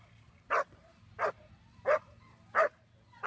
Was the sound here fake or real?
real